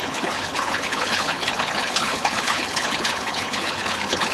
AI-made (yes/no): yes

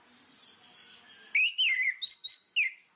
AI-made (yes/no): no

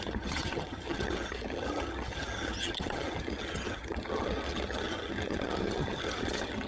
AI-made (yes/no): yes